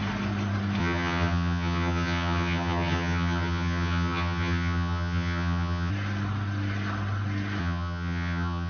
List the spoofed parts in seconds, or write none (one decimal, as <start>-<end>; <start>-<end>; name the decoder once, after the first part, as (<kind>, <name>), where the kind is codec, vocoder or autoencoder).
0.8-5.9 (vocoder, HiFi-GAN); 7.6-8.7